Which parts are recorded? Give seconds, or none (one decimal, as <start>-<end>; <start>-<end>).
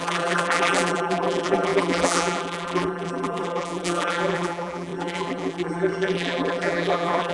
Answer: none